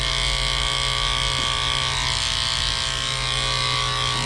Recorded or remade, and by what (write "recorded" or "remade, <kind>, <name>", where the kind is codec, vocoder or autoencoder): recorded